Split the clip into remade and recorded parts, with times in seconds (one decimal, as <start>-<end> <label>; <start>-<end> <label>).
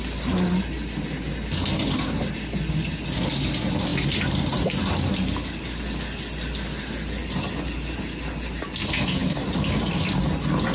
0.0-10.7 recorded